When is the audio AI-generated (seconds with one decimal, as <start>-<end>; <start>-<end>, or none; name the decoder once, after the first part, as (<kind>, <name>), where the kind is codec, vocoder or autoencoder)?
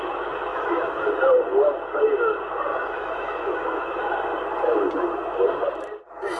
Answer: 0.5-1.1 (autoencoder, DAC-VAE); 2.7-4.0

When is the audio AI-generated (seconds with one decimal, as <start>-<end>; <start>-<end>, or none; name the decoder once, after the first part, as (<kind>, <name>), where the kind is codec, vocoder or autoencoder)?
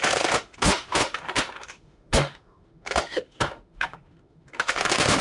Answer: 0.0-5.2 (autoencoder, DAC-VAE)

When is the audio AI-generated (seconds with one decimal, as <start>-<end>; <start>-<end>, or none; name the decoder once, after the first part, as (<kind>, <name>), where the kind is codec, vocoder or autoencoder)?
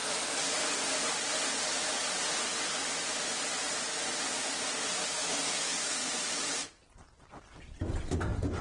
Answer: 5.2-5.9 (autoencoder, DAC-VAE)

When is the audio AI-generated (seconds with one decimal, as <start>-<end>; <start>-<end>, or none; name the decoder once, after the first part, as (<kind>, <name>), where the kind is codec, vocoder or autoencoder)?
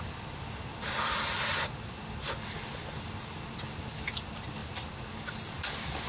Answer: none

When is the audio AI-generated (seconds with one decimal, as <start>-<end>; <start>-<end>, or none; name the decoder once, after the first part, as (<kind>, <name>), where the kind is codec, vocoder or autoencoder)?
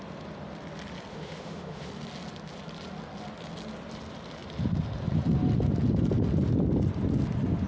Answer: 1.1-1.9 (autoencoder, DAC-VAE)